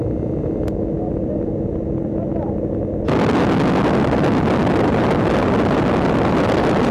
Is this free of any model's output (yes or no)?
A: yes